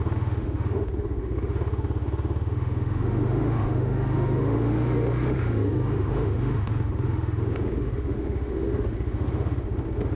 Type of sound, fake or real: fake